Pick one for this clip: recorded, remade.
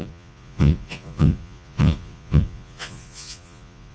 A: remade